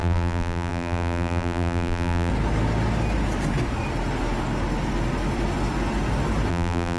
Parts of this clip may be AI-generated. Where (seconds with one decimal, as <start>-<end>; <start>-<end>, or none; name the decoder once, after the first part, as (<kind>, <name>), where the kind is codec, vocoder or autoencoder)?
0.0-2.3 (vocoder, BigVGAN v2); 6.5-7.0